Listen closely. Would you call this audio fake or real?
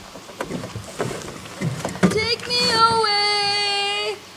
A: real